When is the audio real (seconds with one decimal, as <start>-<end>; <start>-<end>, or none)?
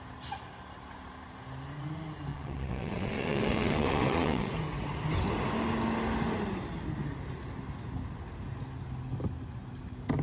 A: 0.0-2.3; 4.5-10.2